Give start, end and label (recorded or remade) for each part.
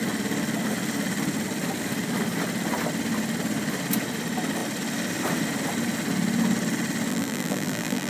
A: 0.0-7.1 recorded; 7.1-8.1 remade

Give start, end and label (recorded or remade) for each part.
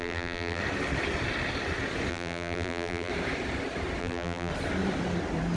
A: 0.0-0.6 remade; 0.6-2.1 recorded; 2.1-3.1 remade; 3.1-4.0 recorded; 4.0-4.5 remade; 4.5-5.6 recorded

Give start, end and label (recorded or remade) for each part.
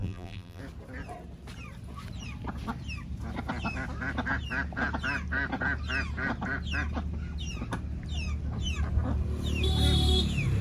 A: 0.0-0.6 remade; 0.6-10.6 recorded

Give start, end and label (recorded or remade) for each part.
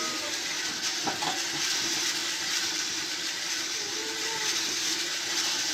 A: 0.0-2.2 recorded; 2.2-4.7 remade; 4.7-5.7 recorded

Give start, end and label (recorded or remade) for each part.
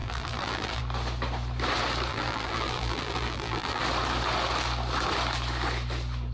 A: 0.0-0.8 remade; 0.8-2.1 recorded; 2.1-3.8 remade; 3.8-6.3 recorded